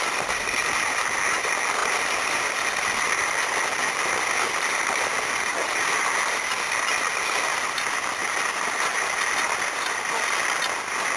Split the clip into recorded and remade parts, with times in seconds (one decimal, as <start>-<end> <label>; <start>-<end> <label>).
0.0-11.2 recorded